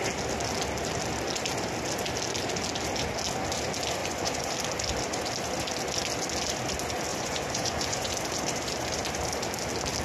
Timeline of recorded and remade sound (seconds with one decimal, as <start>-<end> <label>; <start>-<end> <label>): 0.0-4.0 recorded; 4.0-4.5 remade; 4.5-7.1 recorded; 7.1-8.1 remade; 8.1-10.0 recorded